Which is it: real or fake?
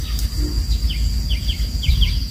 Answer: real